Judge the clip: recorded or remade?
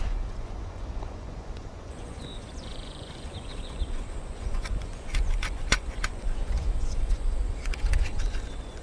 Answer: remade